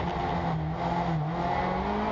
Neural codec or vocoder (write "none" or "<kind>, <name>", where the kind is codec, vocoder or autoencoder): none